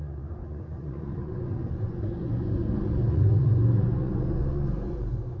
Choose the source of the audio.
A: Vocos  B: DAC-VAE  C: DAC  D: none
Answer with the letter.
A